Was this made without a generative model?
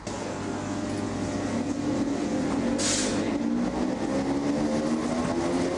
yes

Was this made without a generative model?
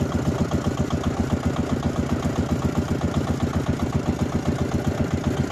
yes